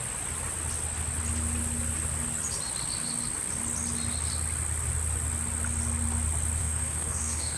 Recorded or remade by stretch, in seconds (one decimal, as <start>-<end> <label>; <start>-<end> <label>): 0.0-6.6 recorded; 6.6-7.6 remade